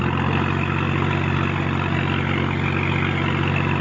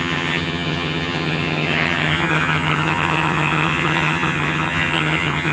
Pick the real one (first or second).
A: first